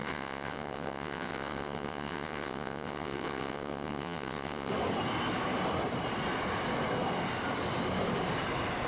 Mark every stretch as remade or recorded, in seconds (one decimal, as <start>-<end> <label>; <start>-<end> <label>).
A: 0.0-4.7 remade; 4.7-8.9 recorded